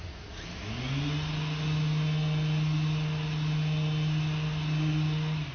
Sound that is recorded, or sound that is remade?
recorded